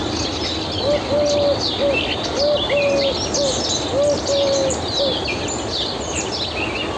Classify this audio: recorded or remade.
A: recorded